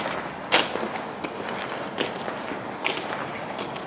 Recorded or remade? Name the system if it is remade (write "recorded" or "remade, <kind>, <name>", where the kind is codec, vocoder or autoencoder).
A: recorded